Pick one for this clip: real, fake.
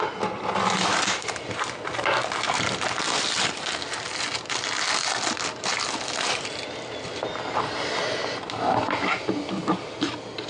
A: real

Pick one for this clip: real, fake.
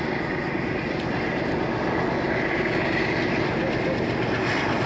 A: real